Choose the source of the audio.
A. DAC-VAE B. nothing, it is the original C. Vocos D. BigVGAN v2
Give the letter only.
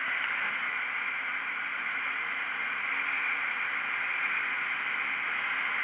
B